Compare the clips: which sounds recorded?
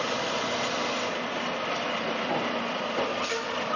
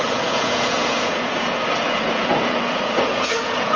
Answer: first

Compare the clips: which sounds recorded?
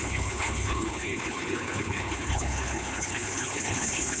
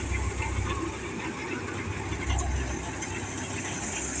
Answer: second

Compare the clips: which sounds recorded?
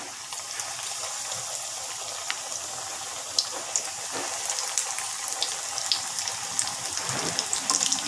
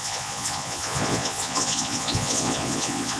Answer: first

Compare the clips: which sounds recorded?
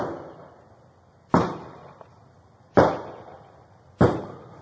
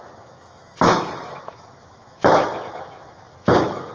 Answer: first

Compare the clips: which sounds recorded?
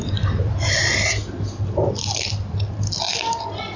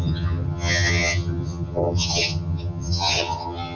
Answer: first